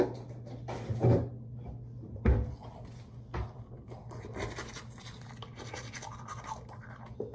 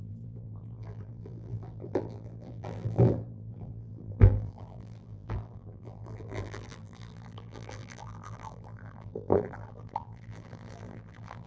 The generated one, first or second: second